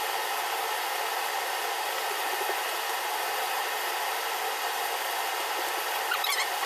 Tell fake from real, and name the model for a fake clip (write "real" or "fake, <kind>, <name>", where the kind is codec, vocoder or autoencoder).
real